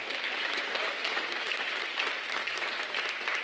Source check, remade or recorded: recorded